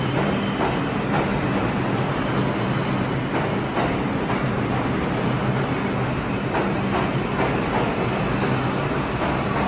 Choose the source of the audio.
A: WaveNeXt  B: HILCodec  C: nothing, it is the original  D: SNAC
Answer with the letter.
C